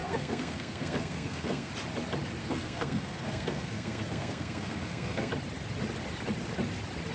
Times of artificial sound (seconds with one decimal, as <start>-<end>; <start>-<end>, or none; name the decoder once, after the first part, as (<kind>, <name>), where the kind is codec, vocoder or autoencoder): 0.0-1.7 (codec, SNAC); 2.4-5.3